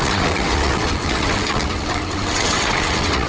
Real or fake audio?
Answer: fake